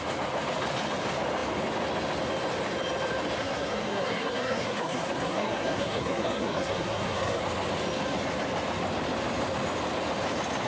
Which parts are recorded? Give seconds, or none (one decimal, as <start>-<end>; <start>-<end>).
0.0-3.4; 7.4-10.7

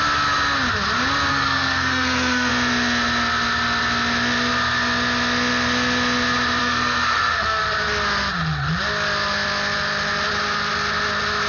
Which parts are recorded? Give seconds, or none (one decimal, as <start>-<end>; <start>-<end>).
0.0-1.3; 2.5-6.6; 7.6-11.5

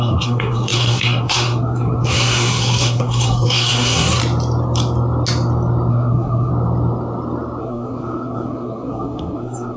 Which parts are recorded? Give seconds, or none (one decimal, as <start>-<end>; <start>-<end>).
4.2-5.9; 6.5-7.6